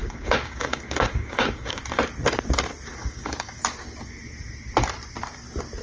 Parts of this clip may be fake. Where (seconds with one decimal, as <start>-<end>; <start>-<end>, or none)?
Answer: 0.0-1.8; 3.0-3.6